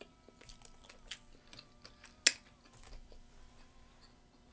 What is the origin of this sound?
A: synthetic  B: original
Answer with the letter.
B